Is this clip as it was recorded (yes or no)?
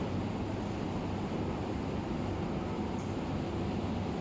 yes